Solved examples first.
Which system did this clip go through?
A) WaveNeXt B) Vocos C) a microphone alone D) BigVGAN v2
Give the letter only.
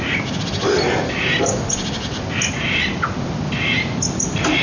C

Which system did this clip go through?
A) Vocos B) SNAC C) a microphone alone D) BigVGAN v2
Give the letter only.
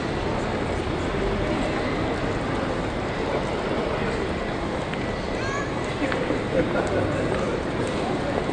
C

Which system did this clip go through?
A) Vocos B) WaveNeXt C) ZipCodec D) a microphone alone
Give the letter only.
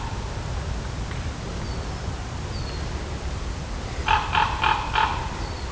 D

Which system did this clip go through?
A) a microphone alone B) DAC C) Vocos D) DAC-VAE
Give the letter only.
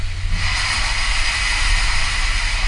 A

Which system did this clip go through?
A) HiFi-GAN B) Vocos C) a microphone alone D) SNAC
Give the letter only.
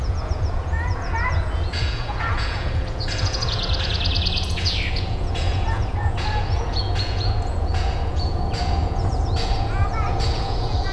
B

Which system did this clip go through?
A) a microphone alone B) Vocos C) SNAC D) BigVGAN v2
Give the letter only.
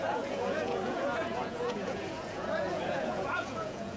B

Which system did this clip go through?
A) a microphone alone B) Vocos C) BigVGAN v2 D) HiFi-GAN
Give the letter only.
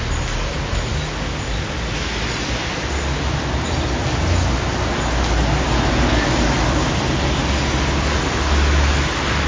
A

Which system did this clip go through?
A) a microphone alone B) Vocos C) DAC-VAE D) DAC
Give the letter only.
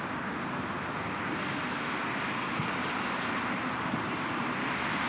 A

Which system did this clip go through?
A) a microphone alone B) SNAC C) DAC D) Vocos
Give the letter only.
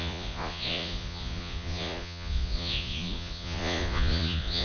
D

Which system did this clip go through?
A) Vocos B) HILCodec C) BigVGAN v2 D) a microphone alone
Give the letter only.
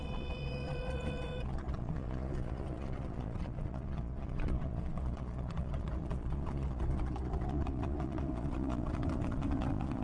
A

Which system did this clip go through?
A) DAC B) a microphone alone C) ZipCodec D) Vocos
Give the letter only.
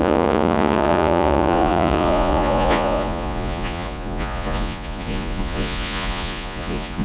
D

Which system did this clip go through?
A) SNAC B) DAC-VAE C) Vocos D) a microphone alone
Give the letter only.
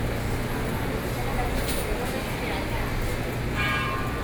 D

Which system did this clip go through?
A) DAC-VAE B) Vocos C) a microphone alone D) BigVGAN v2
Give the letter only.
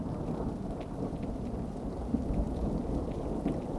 C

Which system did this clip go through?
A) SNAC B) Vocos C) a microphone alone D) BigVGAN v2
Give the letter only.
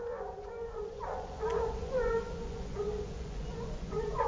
B